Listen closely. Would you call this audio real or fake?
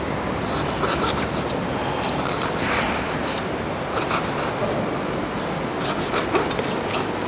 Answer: real